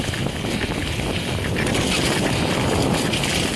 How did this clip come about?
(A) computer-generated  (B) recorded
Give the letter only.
B